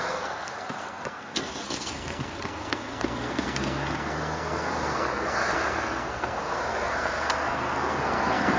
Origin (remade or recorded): remade